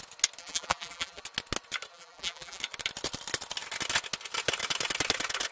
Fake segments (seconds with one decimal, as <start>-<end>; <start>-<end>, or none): 0.4-1.2; 1.9-2.6